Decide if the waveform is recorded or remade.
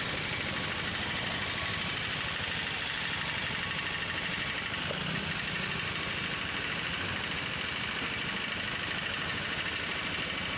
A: recorded